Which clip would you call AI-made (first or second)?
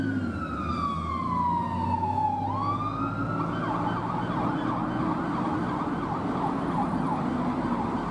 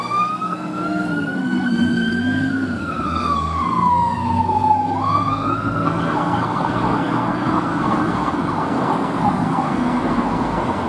second